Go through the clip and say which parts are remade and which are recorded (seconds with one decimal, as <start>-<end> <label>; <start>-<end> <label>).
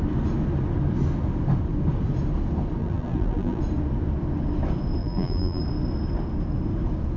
0.0-2.8 recorded; 2.8-3.6 remade; 3.6-5.0 recorded; 5.0-5.6 remade; 5.6-7.2 recorded